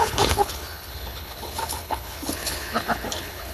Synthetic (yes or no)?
yes